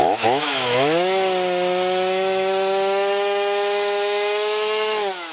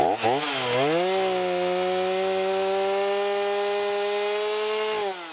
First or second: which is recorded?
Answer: second